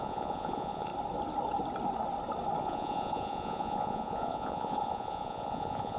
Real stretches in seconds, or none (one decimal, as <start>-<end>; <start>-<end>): 0.9-2.6